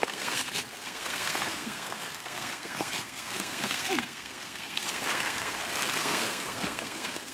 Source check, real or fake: fake